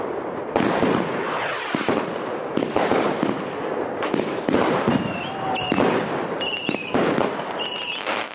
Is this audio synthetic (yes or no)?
no